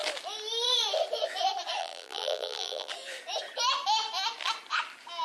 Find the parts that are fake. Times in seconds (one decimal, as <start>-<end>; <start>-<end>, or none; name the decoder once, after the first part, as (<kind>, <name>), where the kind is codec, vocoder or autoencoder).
1.8-2.9 (vocoder, BigVGAN v2)